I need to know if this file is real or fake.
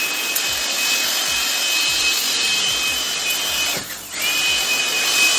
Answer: real